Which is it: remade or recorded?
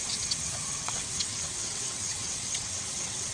remade